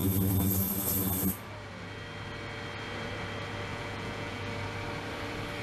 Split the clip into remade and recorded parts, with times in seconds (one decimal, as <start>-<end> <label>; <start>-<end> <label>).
0.0-3.7 recorded; 3.7-4.4 remade; 4.4-5.6 recorded